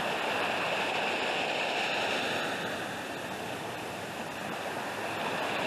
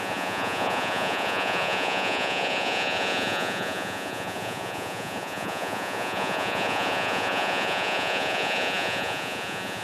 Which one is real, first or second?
first